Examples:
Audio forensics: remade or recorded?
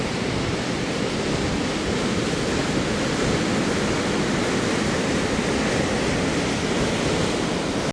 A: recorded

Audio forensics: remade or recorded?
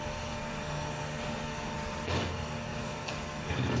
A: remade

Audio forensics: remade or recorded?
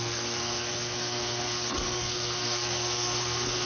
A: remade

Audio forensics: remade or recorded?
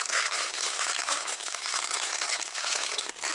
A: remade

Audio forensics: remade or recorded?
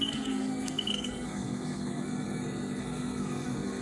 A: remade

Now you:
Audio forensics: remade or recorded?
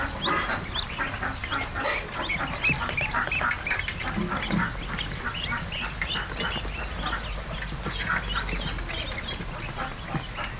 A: recorded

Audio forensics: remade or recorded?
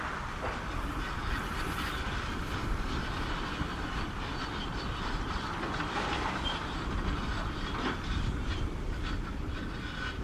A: recorded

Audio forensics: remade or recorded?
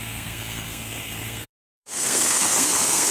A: remade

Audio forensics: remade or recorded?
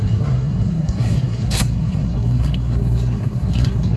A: remade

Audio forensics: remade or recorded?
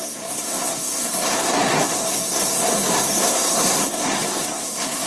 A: remade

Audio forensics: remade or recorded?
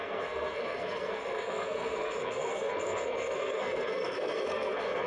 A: remade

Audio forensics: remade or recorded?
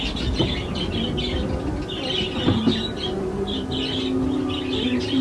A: recorded